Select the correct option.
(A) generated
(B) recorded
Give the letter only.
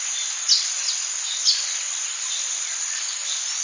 B